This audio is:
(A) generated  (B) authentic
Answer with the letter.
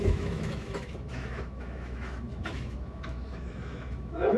A